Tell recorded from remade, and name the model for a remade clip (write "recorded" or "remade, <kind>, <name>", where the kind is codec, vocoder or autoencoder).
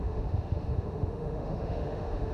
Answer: remade, autoencoder, DAC-VAE